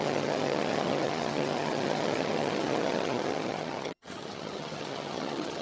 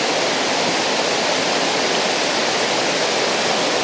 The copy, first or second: first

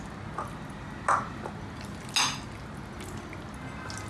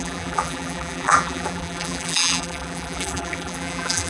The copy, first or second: second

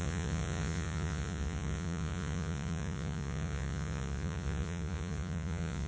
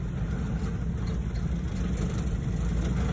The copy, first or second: first